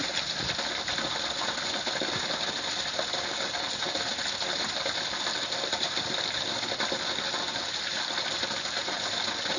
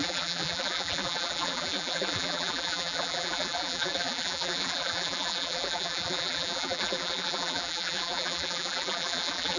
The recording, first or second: first